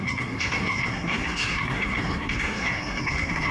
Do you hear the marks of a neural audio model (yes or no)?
yes